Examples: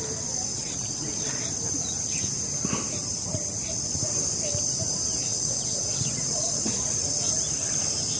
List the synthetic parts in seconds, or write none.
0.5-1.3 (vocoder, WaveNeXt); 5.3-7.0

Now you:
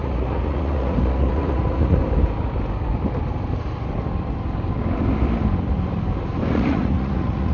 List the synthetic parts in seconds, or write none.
0.0-2.0 (vocoder, Vocos); 6.5-7.5

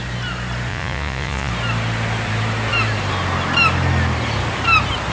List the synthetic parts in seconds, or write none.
0.7-1.5 (vocoder, Vocos)

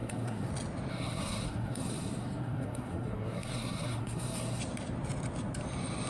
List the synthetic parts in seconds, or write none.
0.0-0.5 (codec, SNAC); 0.9-4.6

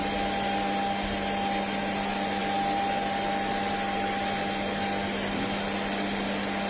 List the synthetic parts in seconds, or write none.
none

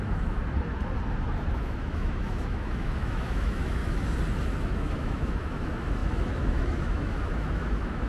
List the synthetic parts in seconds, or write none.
0.0-0.4 (autoencoder, DAC-VAE); 1.5-3.8; 4.6-8.1